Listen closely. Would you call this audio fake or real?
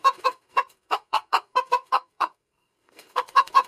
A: fake